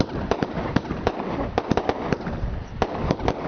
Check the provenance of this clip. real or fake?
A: real